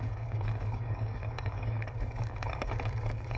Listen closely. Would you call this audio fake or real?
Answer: fake